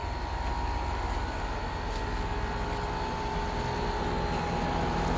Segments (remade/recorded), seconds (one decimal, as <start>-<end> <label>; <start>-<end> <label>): 0.0-5.2 recorded